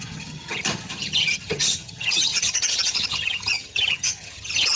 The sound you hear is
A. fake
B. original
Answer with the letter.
A